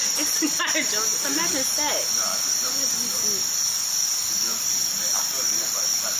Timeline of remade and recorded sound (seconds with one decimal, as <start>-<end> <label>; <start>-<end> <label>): 0.0-6.2 recorded